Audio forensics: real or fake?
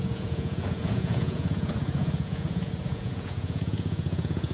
fake